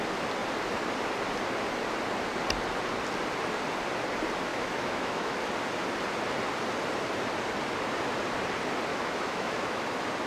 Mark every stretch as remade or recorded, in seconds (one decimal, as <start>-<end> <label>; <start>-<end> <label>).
0.0-4.5 recorded; 4.5-5.4 remade; 5.4-8.9 recorded; 8.9-9.8 remade; 9.8-10.3 recorded

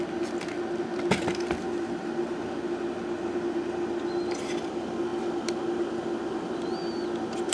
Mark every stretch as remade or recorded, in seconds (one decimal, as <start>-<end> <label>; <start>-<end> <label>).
0.0-7.5 recorded

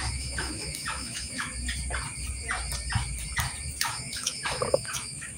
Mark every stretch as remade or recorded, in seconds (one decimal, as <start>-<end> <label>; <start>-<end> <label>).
0.0-1.5 remade; 1.5-3.8 recorded; 3.8-5.4 remade

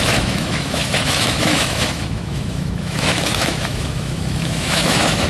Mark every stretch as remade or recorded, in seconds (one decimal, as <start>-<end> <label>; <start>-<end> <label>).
0.0-5.3 remade

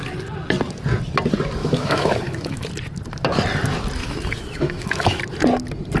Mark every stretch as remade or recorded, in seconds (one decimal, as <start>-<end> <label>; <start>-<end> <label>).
0.0-1.6 recorded; 1.6-2.7 remade; 2.7-4.0 recorded; 4.0-5.2 remade; 5.2-6.0 recorded